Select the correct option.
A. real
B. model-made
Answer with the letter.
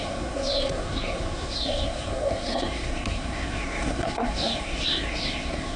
B